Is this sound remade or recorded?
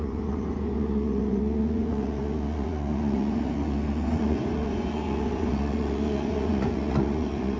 remade